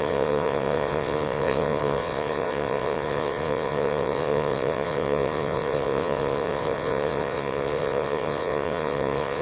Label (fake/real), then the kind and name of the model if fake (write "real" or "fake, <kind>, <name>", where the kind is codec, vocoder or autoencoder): fake, vocoder, WaveNeXt